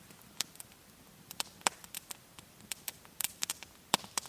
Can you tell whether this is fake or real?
fake